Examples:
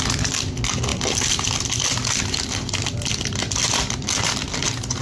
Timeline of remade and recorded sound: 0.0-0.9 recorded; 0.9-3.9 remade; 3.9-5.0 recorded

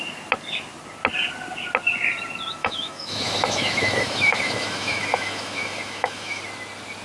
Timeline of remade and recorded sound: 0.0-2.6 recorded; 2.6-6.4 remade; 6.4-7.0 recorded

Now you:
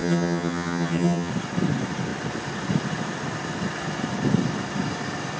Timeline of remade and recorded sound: 0.0-1.3 remade; 1.3-5.4 recorded

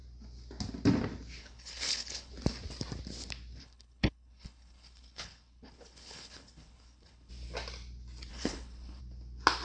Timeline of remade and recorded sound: 0.0-1.4 recorded; 1.4-2.3 remade; 2.3-3.6 recorded; 3.6-7.3 remade; 7.3-8.3 recorded; 8.3-9.0 remade; 9.0-9.6 recorded